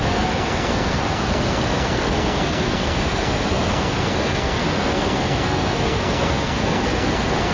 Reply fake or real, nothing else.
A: fake